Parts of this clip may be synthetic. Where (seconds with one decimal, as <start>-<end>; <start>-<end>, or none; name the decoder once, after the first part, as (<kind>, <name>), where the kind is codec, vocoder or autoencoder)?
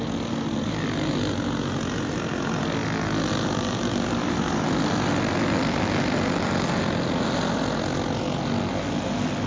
none